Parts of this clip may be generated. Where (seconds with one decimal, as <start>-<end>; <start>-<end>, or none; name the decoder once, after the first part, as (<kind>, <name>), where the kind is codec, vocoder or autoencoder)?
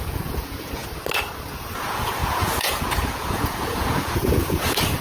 0.0-0.8 (vocoder, Vocos); 1.6-5.0